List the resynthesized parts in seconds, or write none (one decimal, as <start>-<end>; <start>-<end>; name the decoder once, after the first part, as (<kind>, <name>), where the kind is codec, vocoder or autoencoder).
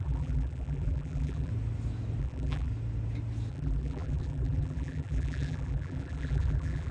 0.0-1.5 (vocoder, BigVGAN v2); 2.2-2.7; 3.5-6.9